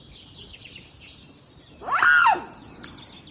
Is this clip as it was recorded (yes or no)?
yes